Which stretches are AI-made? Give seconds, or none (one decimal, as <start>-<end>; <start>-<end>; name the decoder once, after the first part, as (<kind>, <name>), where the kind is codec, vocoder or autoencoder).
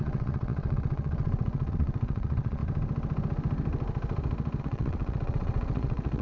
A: 0.0-2.6 (vocoder, WaveNeXt); 4.6-6.2